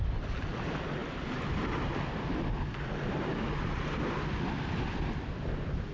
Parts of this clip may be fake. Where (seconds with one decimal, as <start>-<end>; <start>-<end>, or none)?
none